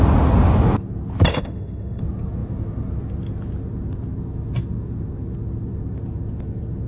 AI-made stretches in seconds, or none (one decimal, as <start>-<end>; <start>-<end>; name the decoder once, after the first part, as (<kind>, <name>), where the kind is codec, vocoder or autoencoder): 1.3-2.0 (autoencoder, DAC-VAE)